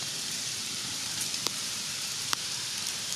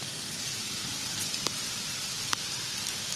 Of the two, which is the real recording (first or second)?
second